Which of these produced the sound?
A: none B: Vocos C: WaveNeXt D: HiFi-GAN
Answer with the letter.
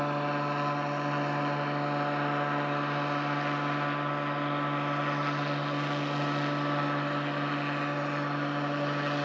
A